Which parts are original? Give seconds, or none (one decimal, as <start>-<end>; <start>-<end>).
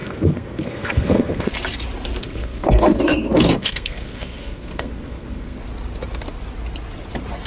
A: 1.5-2.2; 5.6-7.5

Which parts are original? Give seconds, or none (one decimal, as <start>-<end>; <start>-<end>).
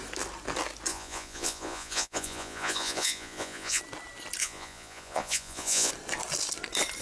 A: 0.0-0.9; 3.8-4.4; 5.9-7.0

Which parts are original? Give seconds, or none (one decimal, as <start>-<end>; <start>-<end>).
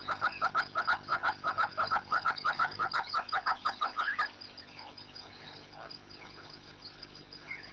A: 4.1-4.6